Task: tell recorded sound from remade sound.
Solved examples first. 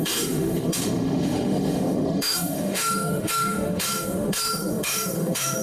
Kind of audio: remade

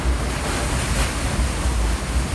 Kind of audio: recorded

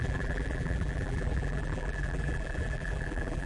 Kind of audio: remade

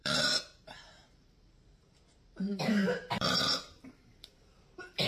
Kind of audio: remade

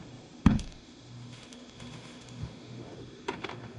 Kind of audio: remade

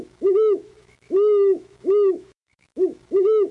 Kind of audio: remade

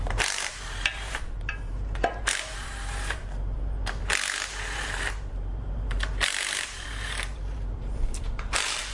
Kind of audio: remade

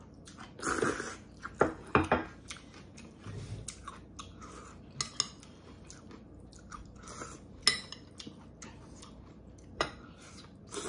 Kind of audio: recorded